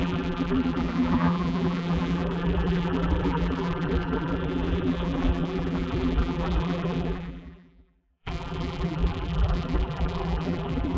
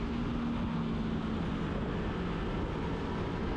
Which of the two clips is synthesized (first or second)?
first